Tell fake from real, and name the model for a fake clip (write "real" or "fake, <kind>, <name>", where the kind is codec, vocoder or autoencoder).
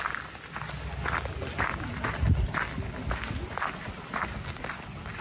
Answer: real